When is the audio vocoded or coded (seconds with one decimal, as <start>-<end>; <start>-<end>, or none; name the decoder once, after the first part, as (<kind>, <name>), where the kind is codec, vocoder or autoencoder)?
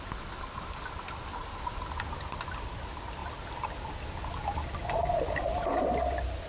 none